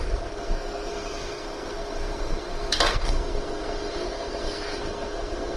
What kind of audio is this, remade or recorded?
remade